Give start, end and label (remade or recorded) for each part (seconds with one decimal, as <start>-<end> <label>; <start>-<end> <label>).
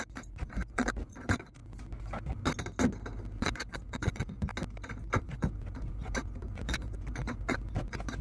0.0-1.6 remade; 1.6-3.4 recorded; 3.4-4.5 remade; 4.5-5.2 recorded; 5.2-8.2 remade